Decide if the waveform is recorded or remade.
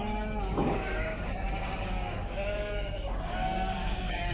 remade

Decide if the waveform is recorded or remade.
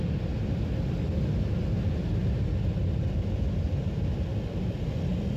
recorded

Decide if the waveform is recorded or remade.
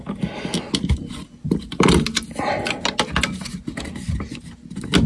recorded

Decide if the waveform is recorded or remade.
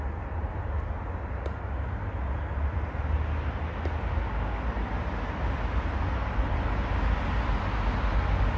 recorded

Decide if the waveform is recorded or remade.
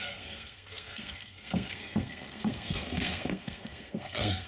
remade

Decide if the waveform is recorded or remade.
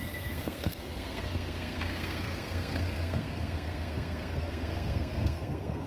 remade